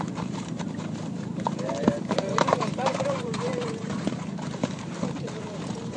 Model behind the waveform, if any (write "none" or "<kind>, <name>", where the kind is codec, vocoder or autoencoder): vocoder, BigVGAN v2